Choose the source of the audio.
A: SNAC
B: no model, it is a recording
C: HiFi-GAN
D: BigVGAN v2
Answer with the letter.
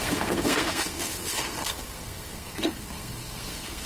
A